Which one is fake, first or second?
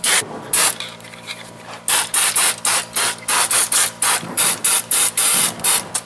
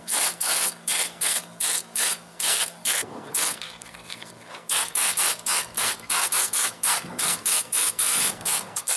second